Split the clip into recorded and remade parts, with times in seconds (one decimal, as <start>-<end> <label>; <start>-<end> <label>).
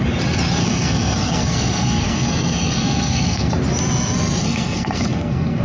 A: 0.0-0.6 recorded; 0.6-3.5 remade; 3.5-4.4 recorded; 4.4-5.6 remade